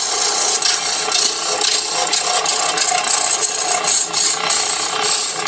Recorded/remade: recorded